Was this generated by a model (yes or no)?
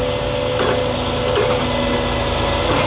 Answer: no